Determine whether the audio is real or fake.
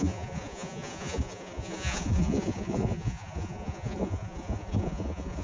fake